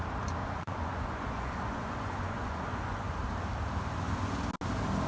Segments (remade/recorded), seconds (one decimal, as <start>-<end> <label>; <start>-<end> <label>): 0.0-0.4 recorded; 0.4-3.1 remade; 3.1-5.1 recorded